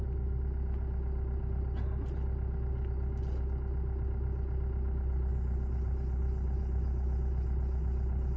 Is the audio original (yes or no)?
yes